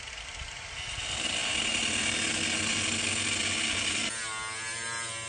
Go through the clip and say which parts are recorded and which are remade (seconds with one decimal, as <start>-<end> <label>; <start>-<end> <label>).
0.0-5.3 recorded